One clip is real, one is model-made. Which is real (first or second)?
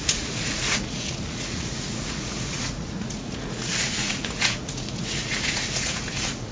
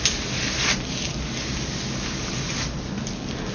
second